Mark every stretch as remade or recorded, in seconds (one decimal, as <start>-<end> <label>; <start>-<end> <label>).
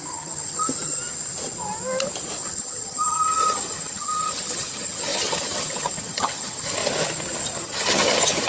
0.0-1.0 remade; 1.0-2.4 recorded; 2.4-6.8 remade; 6.8-7.6 recorded; 7.6-8.5 remade